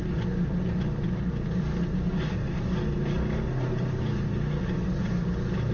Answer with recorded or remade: recorded